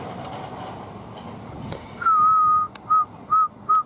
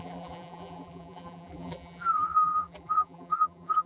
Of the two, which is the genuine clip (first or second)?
first